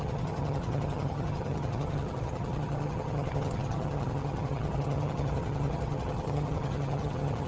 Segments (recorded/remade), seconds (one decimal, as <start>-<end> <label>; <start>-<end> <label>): 0.0-7.5 remade